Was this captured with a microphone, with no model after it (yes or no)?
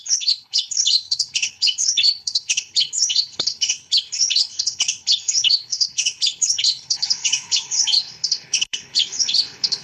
no